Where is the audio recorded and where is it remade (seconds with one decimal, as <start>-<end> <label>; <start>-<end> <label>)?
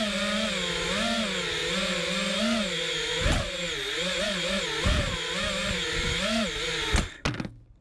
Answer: 0.0-7.8 recorded